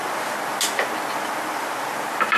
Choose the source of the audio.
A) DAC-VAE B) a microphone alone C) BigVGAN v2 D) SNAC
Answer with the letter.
B